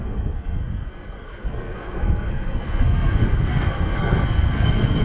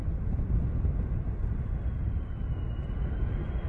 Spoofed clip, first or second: first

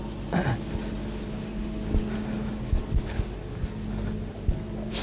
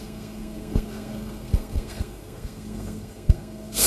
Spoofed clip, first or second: second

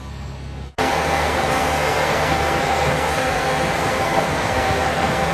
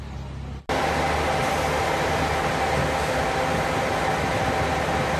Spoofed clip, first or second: first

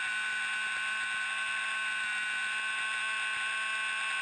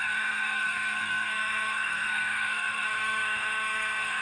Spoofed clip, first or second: second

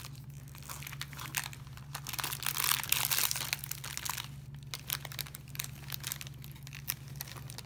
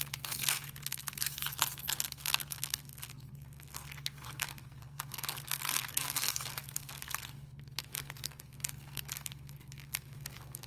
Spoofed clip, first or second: second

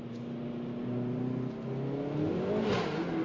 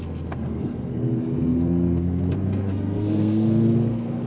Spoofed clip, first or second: second